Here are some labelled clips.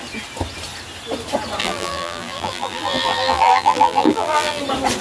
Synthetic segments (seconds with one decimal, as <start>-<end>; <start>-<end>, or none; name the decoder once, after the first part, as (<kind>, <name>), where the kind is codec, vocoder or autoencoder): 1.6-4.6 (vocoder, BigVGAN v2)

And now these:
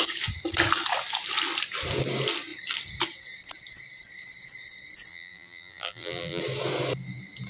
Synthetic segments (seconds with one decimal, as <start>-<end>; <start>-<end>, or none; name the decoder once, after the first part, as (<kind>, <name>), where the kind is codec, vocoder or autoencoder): 5.1-6.4 (vocoder, BigVGAN v2)

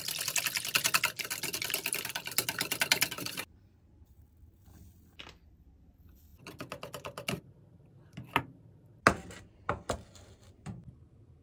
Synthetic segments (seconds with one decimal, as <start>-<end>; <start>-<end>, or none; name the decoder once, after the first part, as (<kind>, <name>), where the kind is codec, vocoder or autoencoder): none

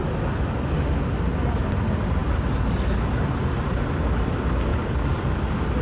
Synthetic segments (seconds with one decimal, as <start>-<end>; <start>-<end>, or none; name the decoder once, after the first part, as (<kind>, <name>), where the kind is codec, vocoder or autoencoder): 4.7-5.8 (vocoder, BigVGAN v2)